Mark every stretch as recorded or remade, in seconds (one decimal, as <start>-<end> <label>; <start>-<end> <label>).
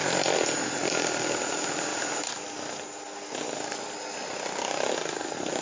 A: 0.0-5.6 recorded